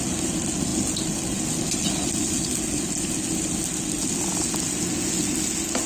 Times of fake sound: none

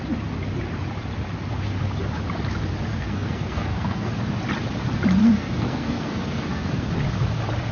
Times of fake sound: 2.9-4.1 (codec, SNAC); 5.2-6.9